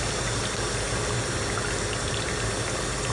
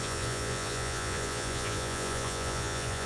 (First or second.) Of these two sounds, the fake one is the second